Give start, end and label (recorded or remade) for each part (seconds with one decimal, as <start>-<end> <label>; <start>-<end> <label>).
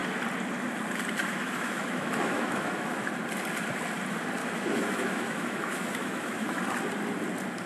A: 0.0-1.2 recorded; 1.2-3.1 remade; 3.1-4.4 recorded; 4.4-6.6 remade; 6.6-7.7 recorded